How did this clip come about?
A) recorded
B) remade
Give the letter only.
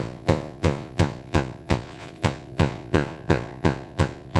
B